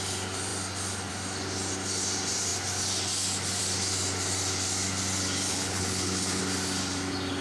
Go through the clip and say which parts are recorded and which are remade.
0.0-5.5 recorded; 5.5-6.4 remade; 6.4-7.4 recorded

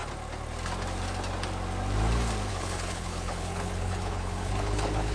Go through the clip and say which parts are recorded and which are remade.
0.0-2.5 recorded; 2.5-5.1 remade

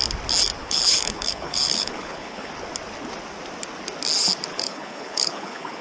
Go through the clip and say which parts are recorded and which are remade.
0.0-0.6 recorded; 0.6-2.5 remade; 2.5-4.5 recorded; 4.5-5.8 remade

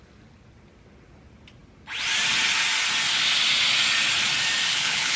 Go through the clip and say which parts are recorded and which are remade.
0.0-4.7 recorded; 4.7-5.2 remade

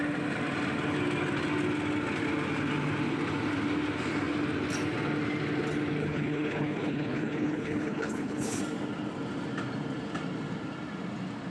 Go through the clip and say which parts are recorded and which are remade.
0.0-6.0 recorded; 6.0-8.6 remade; 8.6-11.5 recorded

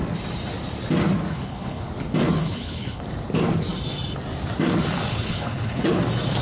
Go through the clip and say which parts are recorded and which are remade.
0.0-1.3 recorded; 1.3-1.9 remade; 1.9-2.4 recorded; 2.4-3.0 remade; 3.0-5.1 recorded; 5.1-6.0 remade; 6.0-6.4 recorded

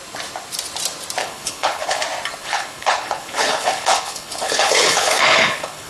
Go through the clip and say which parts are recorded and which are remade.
0.0-1.2 recorded; 1.2-2.0 remade; 2.0-2.4 recorded; 2.4-5.9 remade

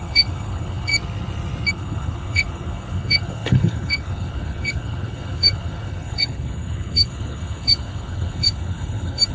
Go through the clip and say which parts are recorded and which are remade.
0.0-0.9 remade; 0.9-1.7 recorded; 1.7-9.3 remade